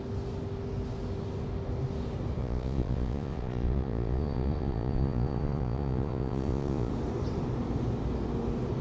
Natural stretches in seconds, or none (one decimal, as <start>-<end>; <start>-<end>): 0.0-2.4; 6.9-8.8

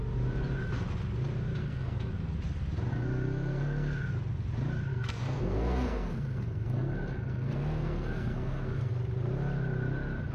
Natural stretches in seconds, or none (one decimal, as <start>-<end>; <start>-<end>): 0.0-1.6; 2.1-2.9; 4.1-4.9; 8.9-10.3

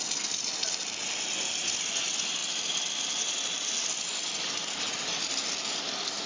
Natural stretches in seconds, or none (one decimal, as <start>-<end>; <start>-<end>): 0.0-6.3

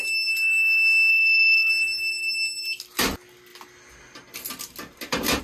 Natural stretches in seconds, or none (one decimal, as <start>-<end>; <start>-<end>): 0.0-1.1; 1.7-5.4

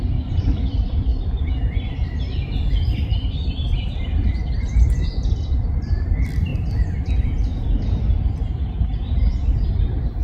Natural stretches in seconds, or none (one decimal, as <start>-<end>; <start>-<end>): 6.5-8.5

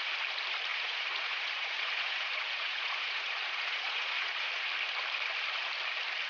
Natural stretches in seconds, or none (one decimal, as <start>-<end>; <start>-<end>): 0.0-0.7; 4.5-6.3

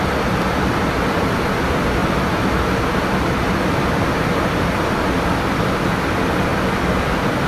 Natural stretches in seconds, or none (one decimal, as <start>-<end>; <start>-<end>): 0.0-7.5